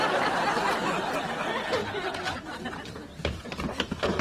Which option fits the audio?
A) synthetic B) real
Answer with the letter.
B